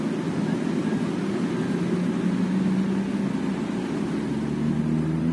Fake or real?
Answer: real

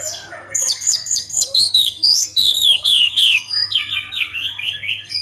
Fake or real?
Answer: fake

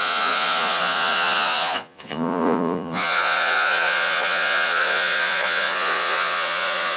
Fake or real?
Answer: fake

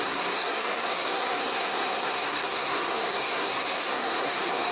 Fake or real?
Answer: fake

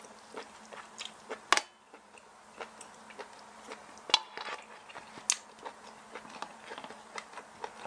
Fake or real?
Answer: real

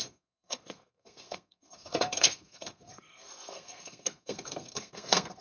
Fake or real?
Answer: fake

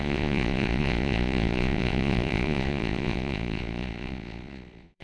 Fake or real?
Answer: fake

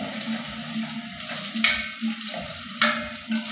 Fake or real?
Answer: real